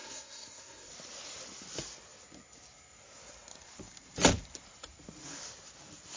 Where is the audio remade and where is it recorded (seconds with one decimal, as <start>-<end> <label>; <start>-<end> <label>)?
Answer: 0.0-0.9 remade; 0.9-6.2 recorded